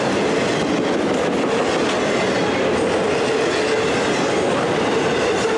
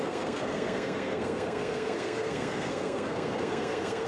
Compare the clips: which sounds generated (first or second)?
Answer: second